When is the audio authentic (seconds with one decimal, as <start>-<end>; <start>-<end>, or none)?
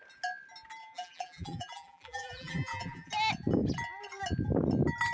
0.0-0.8; 3.1-5.1